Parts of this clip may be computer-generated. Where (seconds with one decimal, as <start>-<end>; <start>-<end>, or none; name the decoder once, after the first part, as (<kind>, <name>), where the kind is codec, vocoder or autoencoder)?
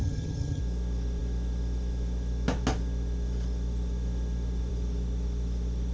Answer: 0.0-0.6 (vocoder, HiFi-GAN)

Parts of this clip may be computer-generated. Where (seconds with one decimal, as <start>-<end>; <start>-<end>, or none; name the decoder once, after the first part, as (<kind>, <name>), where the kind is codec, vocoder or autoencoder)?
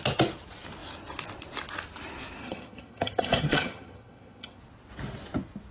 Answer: 2.4-4.6 (vocoder, HiFi-GAN)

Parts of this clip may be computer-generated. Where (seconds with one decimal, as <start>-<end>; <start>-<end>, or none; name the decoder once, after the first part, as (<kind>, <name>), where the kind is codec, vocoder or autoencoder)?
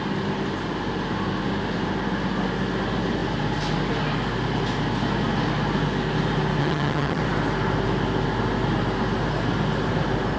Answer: 6.6-7.2 (vocoder, HiFi-GAN)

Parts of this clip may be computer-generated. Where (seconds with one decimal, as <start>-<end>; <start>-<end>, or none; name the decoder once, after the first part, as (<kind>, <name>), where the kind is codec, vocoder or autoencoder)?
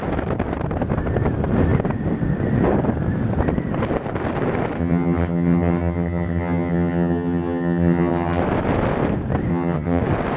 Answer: 4.8-8.4 (vocoder, HiFi-GAN); 9.5-10.0